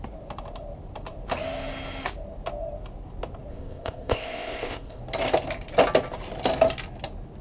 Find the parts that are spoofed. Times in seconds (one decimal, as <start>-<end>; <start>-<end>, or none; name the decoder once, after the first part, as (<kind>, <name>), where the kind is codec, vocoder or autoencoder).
3.5-5.0 (codec, ZipCodec)